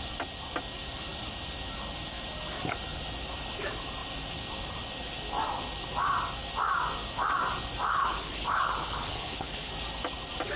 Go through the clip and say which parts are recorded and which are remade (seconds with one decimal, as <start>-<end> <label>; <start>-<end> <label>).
0.0-7.9 recorded; 7.9-9.7 remade; 9.7-10.6 recorded